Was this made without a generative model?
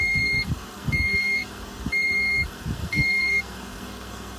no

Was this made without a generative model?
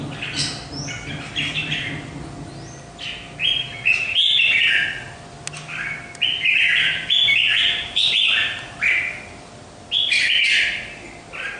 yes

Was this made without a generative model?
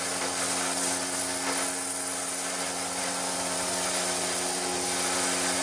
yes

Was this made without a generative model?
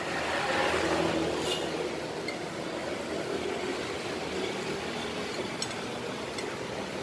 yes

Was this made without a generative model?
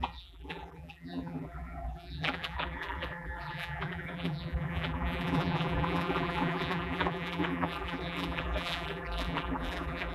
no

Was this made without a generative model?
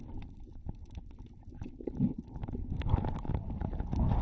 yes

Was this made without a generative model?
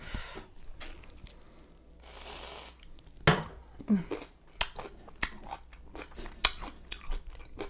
yes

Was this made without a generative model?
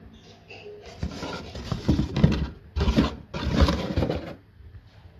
yes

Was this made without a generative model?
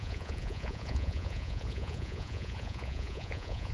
no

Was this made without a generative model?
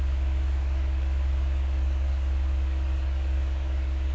no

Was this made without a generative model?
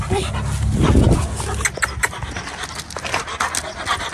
yes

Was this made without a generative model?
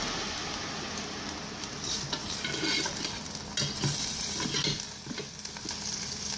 yes